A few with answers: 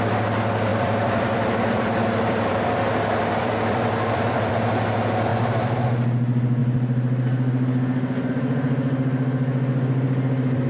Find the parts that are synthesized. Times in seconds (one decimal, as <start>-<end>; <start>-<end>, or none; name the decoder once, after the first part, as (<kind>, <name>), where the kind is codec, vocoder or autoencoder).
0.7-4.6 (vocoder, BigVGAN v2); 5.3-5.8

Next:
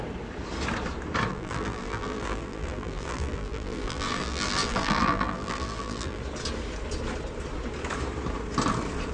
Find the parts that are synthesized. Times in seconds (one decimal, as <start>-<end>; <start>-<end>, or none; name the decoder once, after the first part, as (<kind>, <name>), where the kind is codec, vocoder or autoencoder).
1.3-6.2 (vocoder, BigVGAN v2)

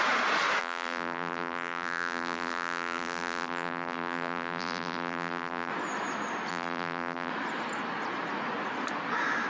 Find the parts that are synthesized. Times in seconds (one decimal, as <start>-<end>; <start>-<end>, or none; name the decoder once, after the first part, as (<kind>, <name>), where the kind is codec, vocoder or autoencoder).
0.6-5.7 (vocoder, BigVGAN v2); 6.5-7.3

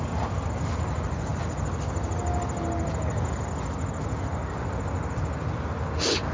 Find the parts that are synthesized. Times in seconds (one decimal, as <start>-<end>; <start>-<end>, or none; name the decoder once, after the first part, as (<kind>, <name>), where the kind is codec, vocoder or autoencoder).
none

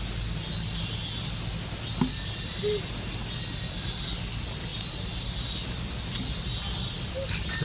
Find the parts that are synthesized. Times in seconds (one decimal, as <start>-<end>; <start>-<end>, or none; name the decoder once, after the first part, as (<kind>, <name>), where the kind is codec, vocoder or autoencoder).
none